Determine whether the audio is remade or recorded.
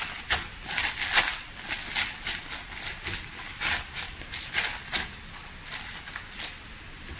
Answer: recorded